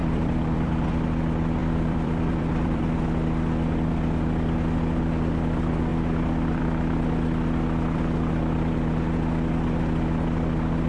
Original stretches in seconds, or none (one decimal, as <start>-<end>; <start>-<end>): 0.7-1.6; 2.8-10.9

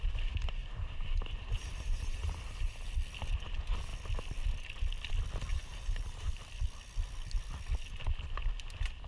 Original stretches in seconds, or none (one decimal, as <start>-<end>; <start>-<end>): 0.0-0.6; 2.9-5.5; 6.4-9.1

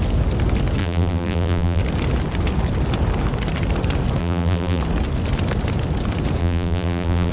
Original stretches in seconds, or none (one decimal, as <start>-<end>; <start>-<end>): 0.0-0.8; 1.8-4.2; 4.8-6.4

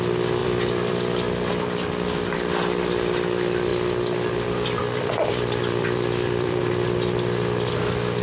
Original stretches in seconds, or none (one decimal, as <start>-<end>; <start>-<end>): 0.0-0.4; 2.8-4.8; 6.6-8.2

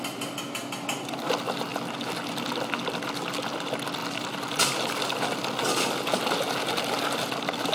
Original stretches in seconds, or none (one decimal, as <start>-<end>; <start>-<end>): 0.0-4.0; 5.2-7.7

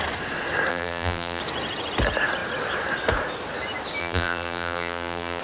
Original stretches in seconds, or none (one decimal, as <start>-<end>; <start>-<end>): 0.0-0.7; 1.4-4.0

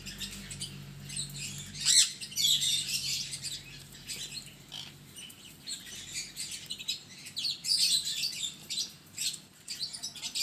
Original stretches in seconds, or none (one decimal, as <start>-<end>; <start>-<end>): 0.0-2.7; 5.9-7.6; 9.8-10.4

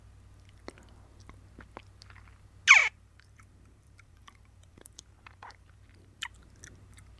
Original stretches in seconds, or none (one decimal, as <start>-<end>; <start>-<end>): 0.0-2.8; 6.3-7.2